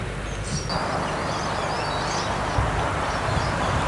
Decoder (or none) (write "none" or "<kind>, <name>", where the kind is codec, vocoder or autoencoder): none